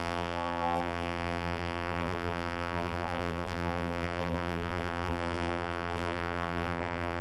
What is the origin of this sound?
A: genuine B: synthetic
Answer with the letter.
B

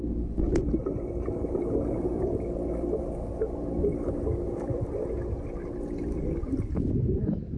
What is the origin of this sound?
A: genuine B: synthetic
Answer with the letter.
A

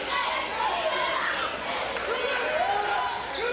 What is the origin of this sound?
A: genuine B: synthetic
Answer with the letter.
A